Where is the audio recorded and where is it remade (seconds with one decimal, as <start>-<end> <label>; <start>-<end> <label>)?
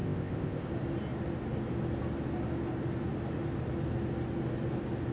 0.0-0.7 remade; 0.7-5.1 recorded